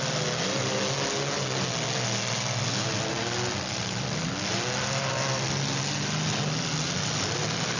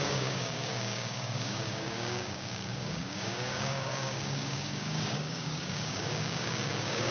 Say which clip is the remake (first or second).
second